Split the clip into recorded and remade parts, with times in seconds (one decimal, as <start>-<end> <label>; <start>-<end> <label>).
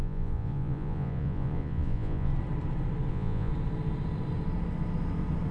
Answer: 0.0-2.3 remade; 2.3-3.1 recorded; 3.1-3.5 remade; 3.5-5.5 recorded